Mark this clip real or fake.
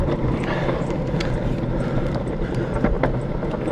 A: real